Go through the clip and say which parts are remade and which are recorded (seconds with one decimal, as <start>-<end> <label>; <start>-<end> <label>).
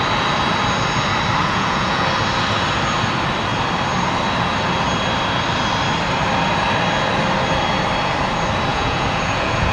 0.0-1.4 recorded; 1.4-2.1 remade; 2.1-8.7 recorded; 8.7-9.7 remade